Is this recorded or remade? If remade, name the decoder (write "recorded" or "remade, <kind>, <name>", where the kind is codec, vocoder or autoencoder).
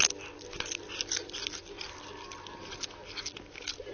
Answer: recorded